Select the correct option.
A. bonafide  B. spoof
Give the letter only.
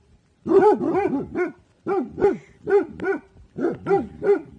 A